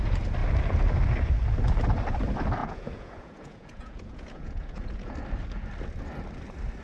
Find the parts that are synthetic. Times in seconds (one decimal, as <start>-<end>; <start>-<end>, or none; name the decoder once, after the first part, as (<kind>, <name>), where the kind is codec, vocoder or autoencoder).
2.6-5.1 (vocoder, Vocos)